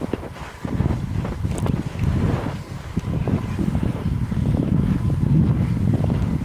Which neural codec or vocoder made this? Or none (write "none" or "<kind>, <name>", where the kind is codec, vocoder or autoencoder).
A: none